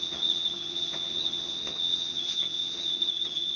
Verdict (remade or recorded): remade